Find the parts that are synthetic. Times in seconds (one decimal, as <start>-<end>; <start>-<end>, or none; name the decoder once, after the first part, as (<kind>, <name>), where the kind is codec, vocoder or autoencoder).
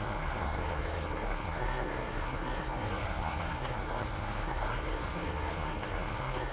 0.0-6.5 (codec, SNAC)